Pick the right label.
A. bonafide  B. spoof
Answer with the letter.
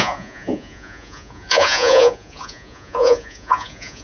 B